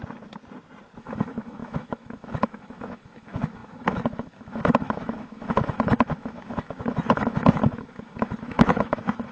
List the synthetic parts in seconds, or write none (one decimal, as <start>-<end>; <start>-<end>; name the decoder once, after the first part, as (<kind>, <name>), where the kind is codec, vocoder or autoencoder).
1.0-9.3 (autoencoder, DAC-VAE)